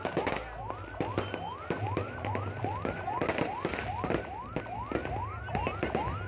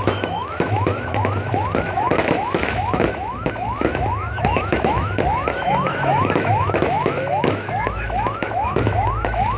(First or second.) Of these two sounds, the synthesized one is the second